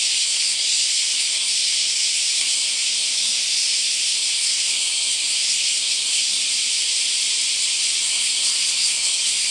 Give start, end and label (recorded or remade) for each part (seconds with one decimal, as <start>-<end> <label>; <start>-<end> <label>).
0.0-6.4 remade; 6.4-8.0 recorded; 8.0-9.5 remade